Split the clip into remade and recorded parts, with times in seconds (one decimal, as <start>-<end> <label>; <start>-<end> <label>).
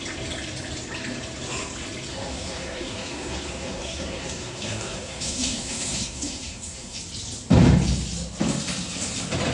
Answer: 0.0-2.1 recorded; 2.1-7.0 remade; 7.0-9.5 recorded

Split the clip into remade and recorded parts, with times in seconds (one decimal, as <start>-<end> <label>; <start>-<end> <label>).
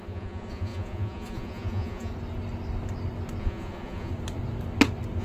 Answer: 0.0-2.1 remade; 2.1-3.4 recorded; 3.4-4.1 remade; 4.1-5.2 recorded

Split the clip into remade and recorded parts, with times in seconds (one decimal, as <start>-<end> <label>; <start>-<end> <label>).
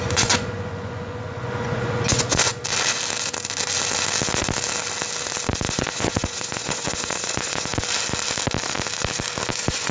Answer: 0.0-2.6 remade; 2.6-5.7 recorded; 5.7-7.7 remade; 7.7-9.5 recorded; 9.5-9.9 remade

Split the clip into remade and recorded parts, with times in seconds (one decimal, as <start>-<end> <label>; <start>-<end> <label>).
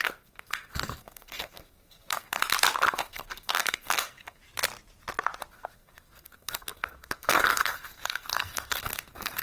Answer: 0.0-2.4 remade; 2.4-2.9 recorded; 2.9-4.4 remade; 4.4-5.5 recorded; 5.5-9.4 remade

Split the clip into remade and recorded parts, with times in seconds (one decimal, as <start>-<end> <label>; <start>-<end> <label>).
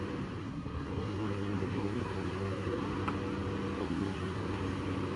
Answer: 0.0-0.4 recorded; 0.4-2.8 remade; 2.8-3.8 recorded; 3.8-4.6 remade; 4.6-5.2 recorded